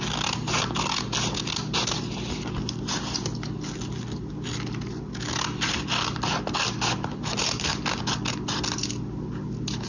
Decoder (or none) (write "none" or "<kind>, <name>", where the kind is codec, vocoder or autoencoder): none